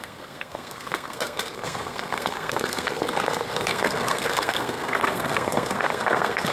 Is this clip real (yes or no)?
no